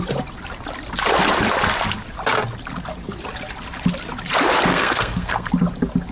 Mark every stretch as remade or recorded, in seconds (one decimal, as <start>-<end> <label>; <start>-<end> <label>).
0.0-4.7 recorded; 4.7-5.5 remade; 5.5-6.1 recorded